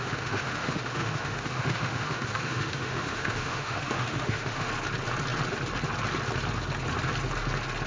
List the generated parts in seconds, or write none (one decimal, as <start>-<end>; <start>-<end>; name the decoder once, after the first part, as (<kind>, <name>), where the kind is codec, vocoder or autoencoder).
0.0-4.7 (autoencoder, DAC-VAE)